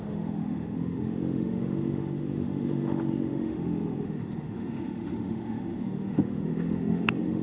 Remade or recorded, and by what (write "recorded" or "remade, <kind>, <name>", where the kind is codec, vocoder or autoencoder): remade, autoencoder, DAC-VAE